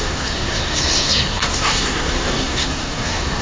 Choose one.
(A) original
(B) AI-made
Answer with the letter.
B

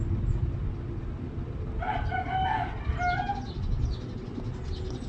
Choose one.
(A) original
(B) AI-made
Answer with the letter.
A